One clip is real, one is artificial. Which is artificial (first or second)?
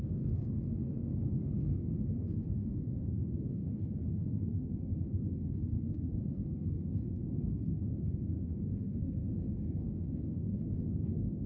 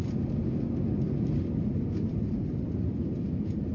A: first